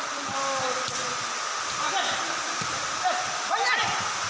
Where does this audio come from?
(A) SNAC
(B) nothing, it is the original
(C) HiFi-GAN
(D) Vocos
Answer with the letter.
B